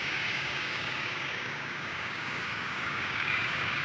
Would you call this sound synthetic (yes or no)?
yes